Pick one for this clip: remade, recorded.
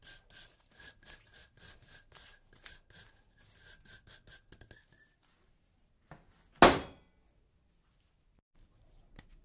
recorded